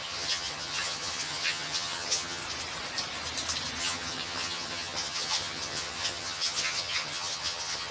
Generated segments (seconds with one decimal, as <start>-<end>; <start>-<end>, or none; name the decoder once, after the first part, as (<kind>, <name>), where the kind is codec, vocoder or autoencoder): 0.0-2.4 (vocoder, HiFi-GAN); 3.8-7.9

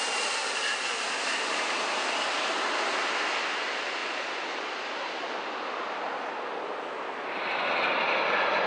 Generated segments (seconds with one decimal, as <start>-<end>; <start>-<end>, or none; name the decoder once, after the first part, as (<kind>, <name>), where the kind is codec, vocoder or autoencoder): none